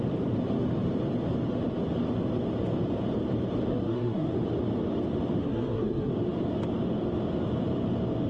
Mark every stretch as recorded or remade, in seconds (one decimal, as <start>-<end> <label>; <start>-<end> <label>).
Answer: 0.0-3.7 recorded; 3.7-4.3 remade; 4.3-5.4 recorded; 5.4-6.1 remade; 6.1-8.3 recorded